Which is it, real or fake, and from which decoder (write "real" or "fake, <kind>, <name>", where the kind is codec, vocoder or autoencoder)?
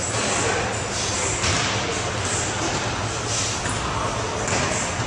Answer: real